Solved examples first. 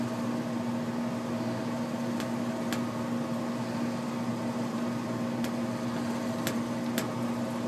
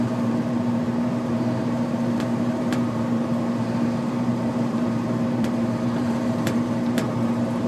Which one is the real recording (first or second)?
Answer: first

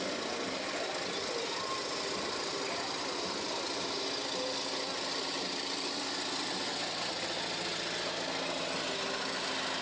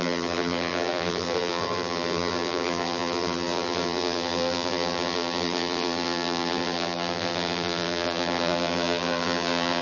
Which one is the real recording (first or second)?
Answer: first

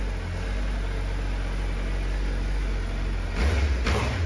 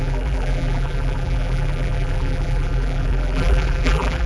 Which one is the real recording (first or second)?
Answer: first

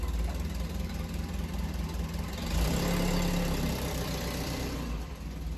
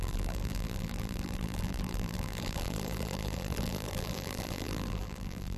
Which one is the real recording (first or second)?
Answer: first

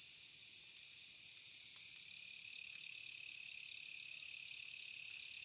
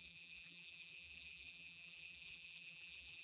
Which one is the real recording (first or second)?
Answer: first